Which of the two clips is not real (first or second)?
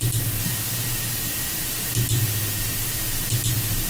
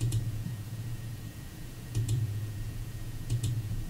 second